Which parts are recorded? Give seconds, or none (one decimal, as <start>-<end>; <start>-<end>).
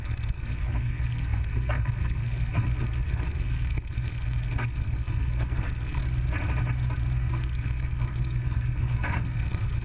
6.0-7.3